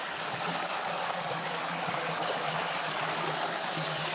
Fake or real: fake